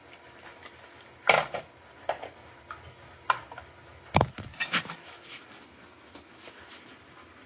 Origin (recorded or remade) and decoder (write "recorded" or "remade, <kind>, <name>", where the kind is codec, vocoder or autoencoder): recorded